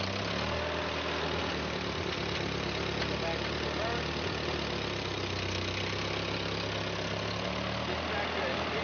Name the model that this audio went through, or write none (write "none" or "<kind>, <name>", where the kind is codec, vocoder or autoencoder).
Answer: none